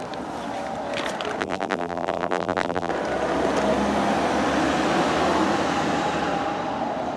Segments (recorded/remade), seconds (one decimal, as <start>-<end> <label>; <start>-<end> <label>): 0.0-1.4 recorded; 1.4-2.9 remade; 2.9-7.2 recorded